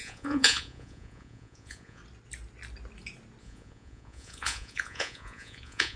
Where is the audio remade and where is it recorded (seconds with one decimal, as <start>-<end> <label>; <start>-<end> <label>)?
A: 0.0-2.0 remade; 2.0-3.4 recorded; 3.4-6.0 remade